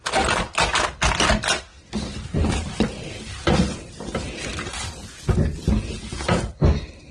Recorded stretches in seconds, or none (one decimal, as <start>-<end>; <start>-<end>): 0.0-7.1

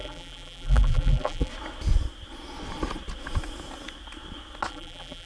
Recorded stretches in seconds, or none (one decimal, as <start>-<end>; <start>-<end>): 1.5-4.7

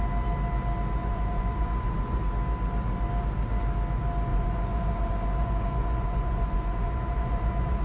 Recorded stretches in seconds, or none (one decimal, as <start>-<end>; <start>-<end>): 0.0-1.0; 2.2-4.3

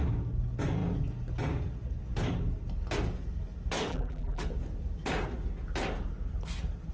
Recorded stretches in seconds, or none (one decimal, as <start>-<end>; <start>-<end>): 0.0-3.9; 4.4-6.9

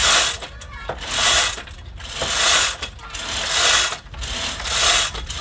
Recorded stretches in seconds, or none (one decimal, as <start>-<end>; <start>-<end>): 0.0-5.4

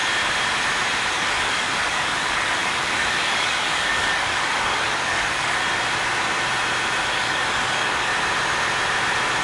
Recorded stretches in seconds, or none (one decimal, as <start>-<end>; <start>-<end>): 0.0-1.1; 5.6-7.0; 8.1-9.4